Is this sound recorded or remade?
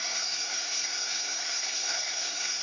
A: remade